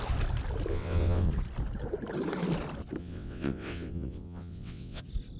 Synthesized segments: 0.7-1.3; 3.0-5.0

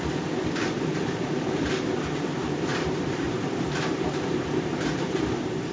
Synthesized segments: 2.7-5.7

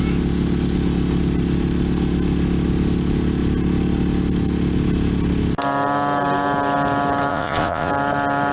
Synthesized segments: 7.3-7.9